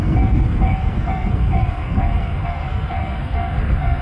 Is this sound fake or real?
fake